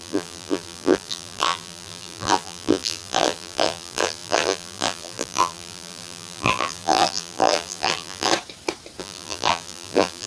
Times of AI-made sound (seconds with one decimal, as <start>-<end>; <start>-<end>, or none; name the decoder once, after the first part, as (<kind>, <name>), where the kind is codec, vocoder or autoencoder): 0.0-8.3 (vocoder, BigVGAN v2); 9.0-10.3